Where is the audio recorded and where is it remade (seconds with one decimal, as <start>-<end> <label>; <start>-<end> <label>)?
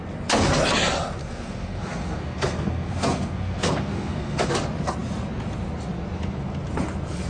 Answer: 0.0-1.2 recorded; 1.2-4.5 remade; 4.5-7.3 recorded